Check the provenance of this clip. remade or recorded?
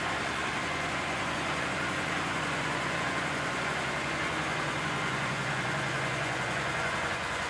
remade